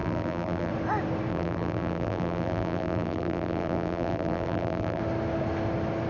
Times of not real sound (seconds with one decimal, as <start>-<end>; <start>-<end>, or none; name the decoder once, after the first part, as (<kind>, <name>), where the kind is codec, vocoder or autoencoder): 0.0-0.7 (vocoder, BigVGAN v2); 1.3-5.0